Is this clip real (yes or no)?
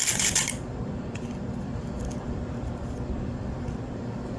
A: no